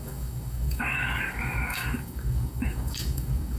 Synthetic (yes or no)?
yes